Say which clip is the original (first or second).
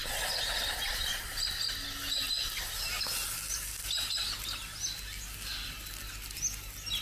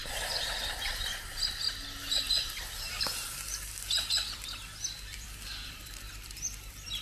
first